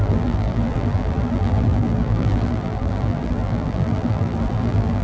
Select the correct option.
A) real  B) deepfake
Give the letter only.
B